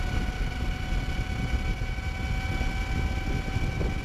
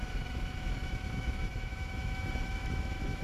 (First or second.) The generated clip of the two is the second